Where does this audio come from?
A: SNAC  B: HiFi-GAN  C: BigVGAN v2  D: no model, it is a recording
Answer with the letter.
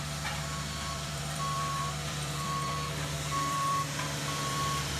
C